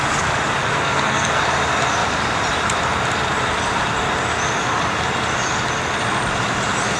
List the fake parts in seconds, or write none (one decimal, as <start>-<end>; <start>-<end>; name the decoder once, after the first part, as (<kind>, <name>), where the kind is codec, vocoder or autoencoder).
0.7-1.4 (codec, SNAC)